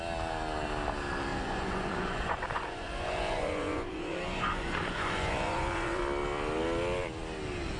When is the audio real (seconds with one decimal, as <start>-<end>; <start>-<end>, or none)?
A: 0.0-1.3; 6.0-7.8